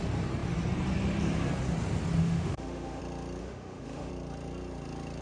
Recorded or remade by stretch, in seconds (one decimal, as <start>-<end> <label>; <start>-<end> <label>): 0.0-2.2 recorded; 2.2-3.0 remade; 3.0-3.4 recorded; 3.4-4.1 remade; 4.1-5.2 recorded